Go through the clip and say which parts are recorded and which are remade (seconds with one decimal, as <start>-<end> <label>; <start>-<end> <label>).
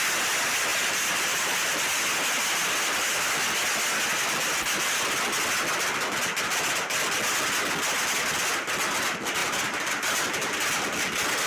0.0-0.7 recorded; 0.7-1.8 remade; 1.8-9.4 recorded; 9.4-10.3 remade; 10.3-11.5 recorded